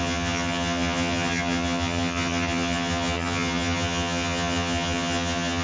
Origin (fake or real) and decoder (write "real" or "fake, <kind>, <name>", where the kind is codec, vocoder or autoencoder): fake, vocoder, HiFi-GAN